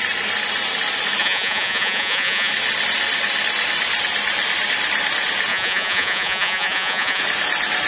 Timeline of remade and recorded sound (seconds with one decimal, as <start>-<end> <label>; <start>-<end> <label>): 0.0-1.2 recorded; 1.2-2.5 remade; 2.5-5.5 recorded; 5.5-7.2 remade; 7.2-7.9 recorded